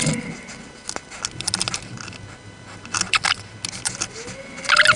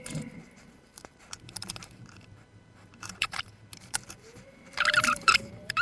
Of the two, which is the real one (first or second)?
first